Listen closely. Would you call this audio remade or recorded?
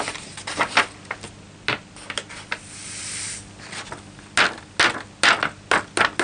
recorded